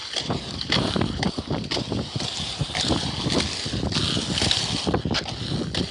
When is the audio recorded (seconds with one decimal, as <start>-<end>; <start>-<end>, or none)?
3.3-5.9